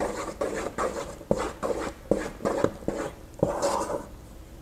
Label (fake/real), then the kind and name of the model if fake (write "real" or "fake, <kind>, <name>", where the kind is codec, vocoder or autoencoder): real